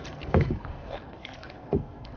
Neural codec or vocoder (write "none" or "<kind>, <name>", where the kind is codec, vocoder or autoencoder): codec, SNAC